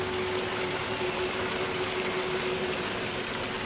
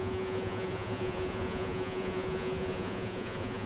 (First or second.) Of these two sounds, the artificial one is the second